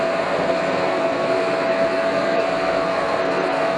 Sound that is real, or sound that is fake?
fake